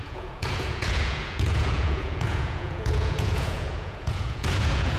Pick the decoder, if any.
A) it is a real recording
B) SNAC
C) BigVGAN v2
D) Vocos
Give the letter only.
D